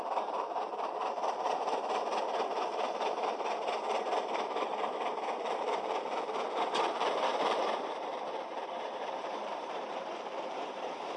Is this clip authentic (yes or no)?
no